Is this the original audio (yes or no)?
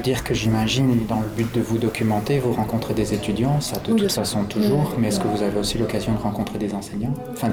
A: yes